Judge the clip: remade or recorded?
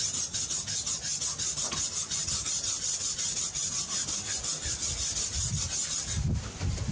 recorded